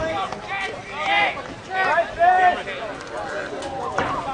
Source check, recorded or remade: recorded